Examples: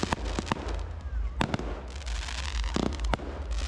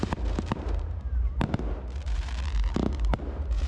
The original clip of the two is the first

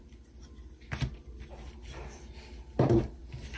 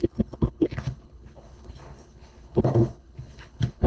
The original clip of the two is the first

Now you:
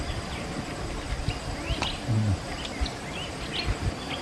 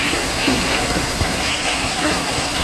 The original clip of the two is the first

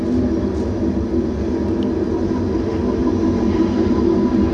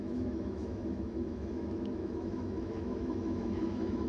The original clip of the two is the first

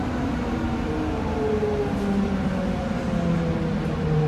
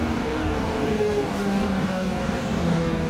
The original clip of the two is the first